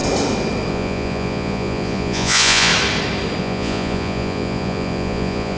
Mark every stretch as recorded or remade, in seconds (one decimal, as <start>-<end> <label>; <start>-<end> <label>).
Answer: 0.0-0.7 recorded; 0.7-2.7 remade; 2.7-3.4 recorded; 3.4-5.6 remade